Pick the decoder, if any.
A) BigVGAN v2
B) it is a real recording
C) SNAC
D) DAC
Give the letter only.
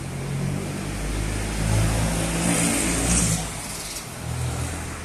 B